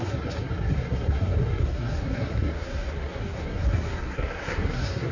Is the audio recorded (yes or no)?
no